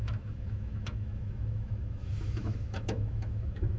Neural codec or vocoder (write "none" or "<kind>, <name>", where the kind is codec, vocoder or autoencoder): autoencoder, DAC-VAE